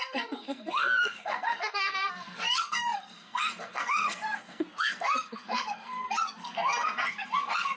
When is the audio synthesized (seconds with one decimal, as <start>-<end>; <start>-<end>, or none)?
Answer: 0.0-7.8